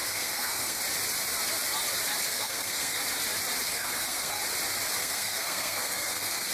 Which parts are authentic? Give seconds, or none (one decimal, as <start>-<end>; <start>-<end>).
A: 0.8-2.3; 3.0-3.7; 4.4-5.0